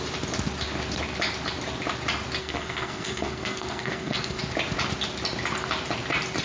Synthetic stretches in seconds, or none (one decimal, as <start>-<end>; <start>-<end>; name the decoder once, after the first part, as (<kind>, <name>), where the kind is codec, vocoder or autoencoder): 2.4-4.4 (codec, SNAC)